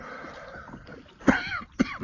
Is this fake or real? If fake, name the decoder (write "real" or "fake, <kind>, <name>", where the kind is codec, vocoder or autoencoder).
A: real